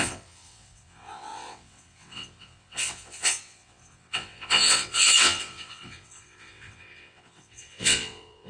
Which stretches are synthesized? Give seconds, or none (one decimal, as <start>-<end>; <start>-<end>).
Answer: 0.0-8.5